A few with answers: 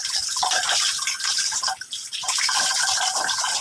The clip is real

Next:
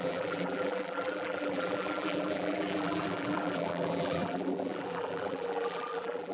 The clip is fake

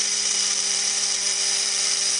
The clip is fake